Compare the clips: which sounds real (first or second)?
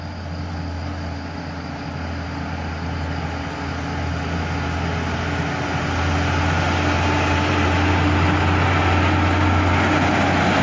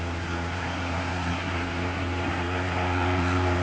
first